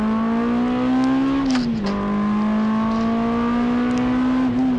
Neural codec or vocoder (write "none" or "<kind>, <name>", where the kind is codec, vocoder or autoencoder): none